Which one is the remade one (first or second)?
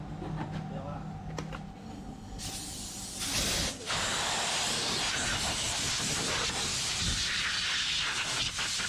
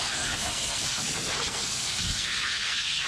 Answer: second